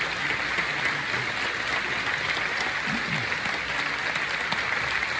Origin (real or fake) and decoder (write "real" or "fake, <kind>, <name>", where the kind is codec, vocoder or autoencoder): real